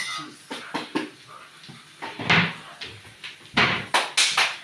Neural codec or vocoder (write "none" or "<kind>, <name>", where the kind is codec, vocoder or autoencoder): none